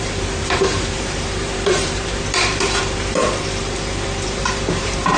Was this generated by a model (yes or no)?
yes